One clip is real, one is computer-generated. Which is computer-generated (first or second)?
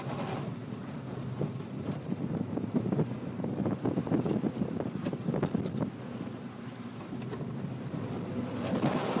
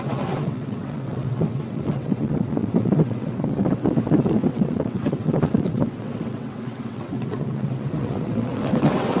second